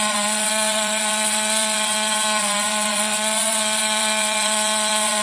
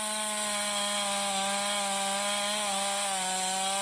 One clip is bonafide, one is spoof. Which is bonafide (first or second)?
second